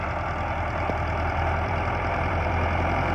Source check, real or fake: fake